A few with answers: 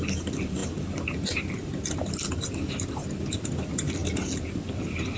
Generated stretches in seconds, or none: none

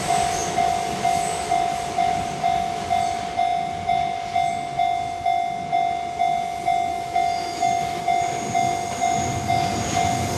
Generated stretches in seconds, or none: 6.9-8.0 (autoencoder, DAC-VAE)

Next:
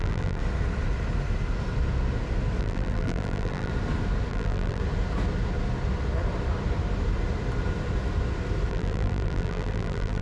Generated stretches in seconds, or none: 0.0-0.4 (vocoder, BigVGAN v2); 2.6-3.7; 4.3-4.8; 8.7-10.2

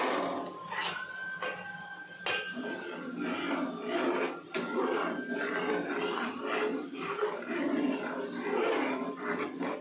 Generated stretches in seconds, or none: none

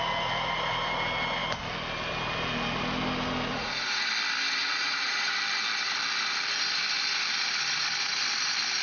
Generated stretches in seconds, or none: 3.5-4.1 (vocoder, Vocos); 4.6-5.3